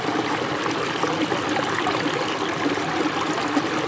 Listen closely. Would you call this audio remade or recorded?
recorded